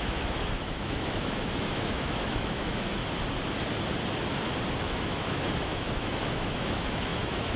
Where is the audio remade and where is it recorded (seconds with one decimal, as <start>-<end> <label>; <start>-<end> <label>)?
0.0-3.0 remade; 3.0-4.8 recorded; 4.8-7.6 remade